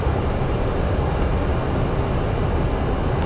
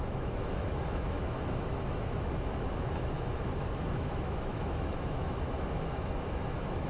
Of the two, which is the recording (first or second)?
first